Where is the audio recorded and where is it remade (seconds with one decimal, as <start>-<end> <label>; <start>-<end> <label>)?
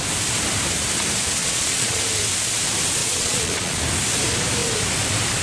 0.0-1.4 recorded; 1.4-2.0 remade; 2.0-3.0 recorded; 3.0-3.8 remade; 3.8-5.4 recorded